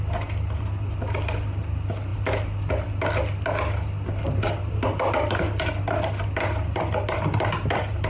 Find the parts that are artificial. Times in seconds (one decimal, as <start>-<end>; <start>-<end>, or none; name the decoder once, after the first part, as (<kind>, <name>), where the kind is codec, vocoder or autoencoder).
none